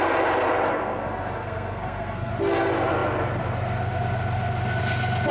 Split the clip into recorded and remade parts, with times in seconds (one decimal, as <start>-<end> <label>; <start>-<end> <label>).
0.0-0.7 recorded; 0.7-2.3 remade; 2.3-5.3 recorded